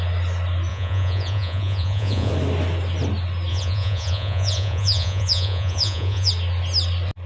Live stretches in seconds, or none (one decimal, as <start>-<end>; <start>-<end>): 0.0-0.7; 2.3-3.5; 6.3-7.3